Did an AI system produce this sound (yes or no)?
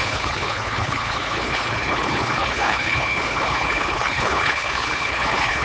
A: yes